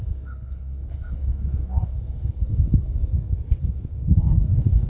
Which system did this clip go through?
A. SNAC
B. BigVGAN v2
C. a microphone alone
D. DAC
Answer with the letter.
A